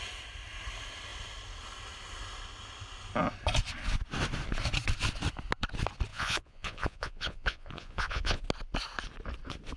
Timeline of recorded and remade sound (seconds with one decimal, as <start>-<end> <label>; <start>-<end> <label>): 0.0-6.1 recorded; 6.1-8.4 remade; 8.4-9.8 recorded